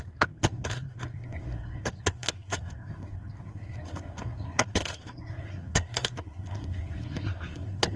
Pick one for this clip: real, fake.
fake